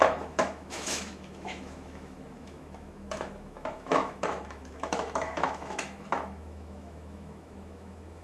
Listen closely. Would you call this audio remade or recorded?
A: remade